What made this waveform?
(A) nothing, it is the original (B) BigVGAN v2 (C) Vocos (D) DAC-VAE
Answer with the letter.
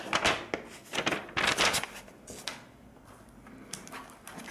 A